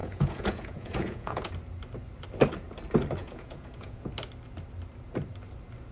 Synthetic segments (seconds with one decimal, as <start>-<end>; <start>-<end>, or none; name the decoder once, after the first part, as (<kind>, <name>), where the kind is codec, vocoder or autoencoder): 0.0-1.5 (vocoder, Vocos); 3.2-4.1